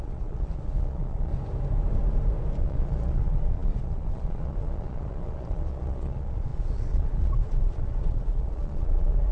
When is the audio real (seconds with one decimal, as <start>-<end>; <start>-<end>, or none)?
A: 1.3-2.6